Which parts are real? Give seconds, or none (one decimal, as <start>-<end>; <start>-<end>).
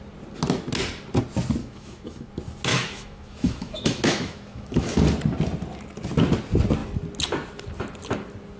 0.0-1.6; 2.3-2.7; 5.0-8.6